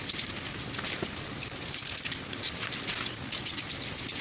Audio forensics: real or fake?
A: real